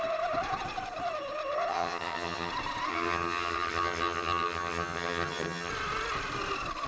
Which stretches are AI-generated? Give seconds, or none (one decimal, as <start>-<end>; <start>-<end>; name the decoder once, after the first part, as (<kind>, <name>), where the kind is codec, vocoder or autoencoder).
1.7-2.5 (vocoder, HiFi-GAN); 2.9-5.7